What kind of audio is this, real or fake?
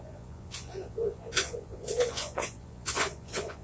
fake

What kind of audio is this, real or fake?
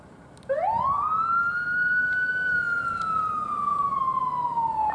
real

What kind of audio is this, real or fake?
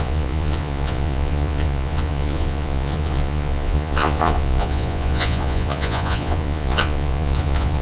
fake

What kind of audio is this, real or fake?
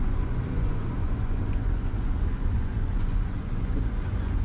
fake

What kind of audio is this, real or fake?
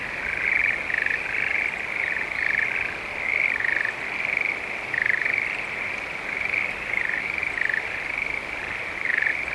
real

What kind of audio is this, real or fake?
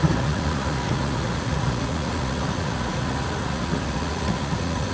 fake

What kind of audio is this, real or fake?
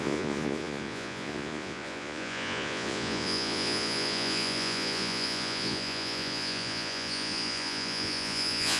fake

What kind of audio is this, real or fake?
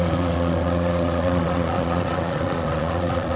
fake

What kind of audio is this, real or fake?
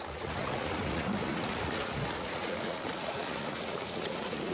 fake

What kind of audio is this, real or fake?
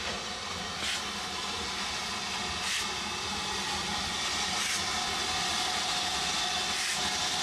real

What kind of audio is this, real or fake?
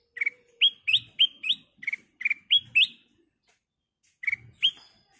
real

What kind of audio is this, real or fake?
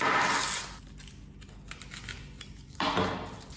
real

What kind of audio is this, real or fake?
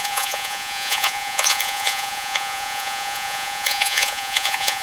fake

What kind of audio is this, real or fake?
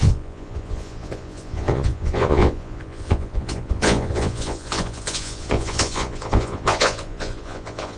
fake